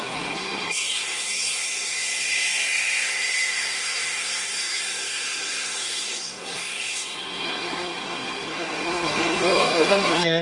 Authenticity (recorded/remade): remade